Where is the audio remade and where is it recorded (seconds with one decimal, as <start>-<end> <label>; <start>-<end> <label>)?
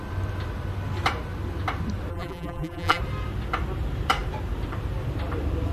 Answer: 0.0-2.1 recorded; 2.1-3.0 remade; 3.0-5.7 recorded